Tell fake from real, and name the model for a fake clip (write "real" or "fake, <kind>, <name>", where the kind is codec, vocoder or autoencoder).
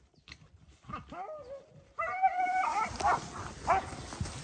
real